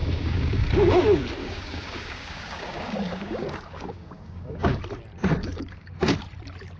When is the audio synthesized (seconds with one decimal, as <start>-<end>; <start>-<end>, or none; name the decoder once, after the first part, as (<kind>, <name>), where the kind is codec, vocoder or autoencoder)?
0.0-0.7 (codec, DAC); 1.4-4.8; 5.4-6.1